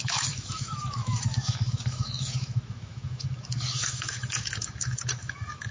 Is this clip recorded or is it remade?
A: remade